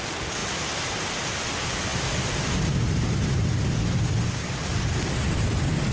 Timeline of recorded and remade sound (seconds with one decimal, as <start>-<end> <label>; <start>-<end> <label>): 0.0-5.9 recorded